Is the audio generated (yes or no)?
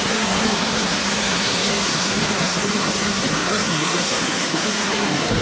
yes